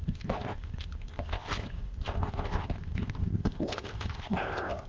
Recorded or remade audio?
remade